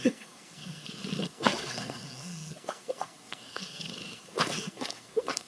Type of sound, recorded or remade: remade